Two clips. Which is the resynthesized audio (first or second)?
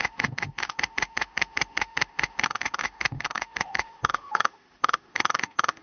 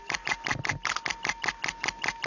first